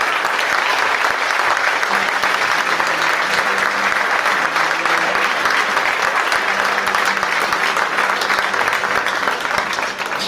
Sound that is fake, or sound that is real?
real